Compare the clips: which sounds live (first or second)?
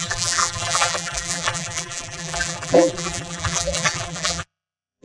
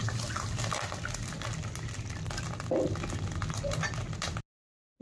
second